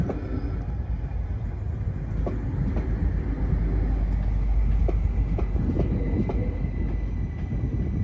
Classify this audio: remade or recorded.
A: recorded